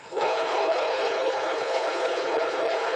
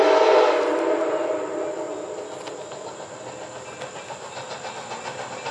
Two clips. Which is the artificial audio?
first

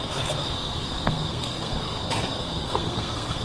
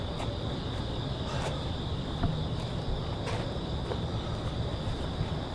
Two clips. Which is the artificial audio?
first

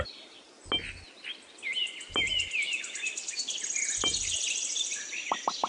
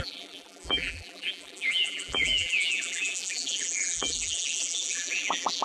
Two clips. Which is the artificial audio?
second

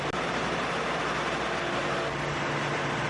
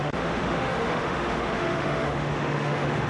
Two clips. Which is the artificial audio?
second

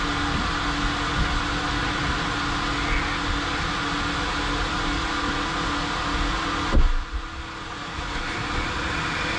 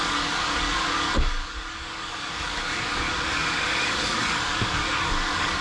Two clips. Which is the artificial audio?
second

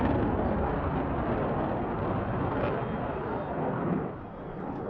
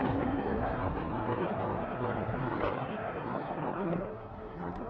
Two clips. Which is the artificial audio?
second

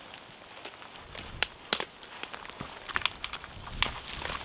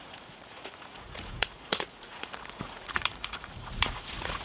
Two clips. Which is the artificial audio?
second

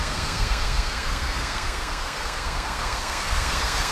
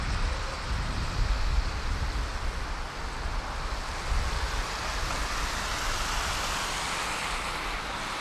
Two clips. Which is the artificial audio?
first